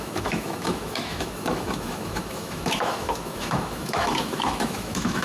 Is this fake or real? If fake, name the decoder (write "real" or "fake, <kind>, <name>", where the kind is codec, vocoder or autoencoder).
fake, autoencoder, DAC-VAE